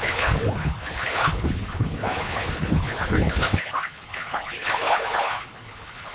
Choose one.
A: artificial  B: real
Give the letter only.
A